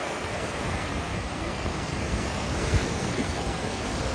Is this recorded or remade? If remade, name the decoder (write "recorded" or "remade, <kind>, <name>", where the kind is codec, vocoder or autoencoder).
remade, codec, SNAC